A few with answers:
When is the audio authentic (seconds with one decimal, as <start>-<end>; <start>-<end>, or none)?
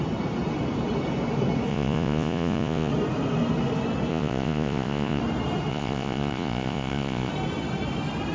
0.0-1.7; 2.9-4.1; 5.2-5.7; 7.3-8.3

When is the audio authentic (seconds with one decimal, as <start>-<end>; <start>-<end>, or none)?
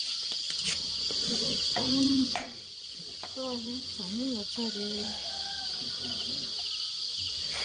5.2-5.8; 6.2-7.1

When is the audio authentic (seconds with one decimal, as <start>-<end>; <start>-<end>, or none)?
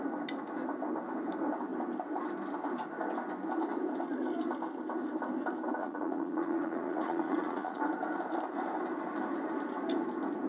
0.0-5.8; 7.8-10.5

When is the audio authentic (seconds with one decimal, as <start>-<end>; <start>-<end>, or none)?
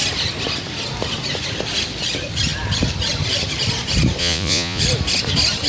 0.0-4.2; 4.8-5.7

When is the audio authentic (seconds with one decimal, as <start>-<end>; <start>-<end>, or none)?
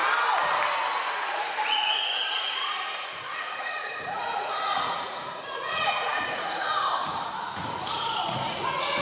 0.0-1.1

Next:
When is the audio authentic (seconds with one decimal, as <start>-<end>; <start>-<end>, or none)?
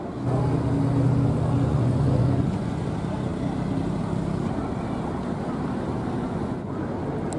0.0-1.7; 2.9-6.2; 6.8-7.4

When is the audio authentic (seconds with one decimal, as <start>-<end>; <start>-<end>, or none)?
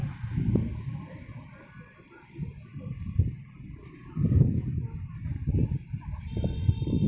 0.0-7.1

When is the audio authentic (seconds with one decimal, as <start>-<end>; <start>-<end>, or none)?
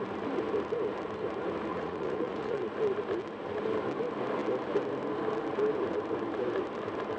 0.0-1.7; 2.6-7.2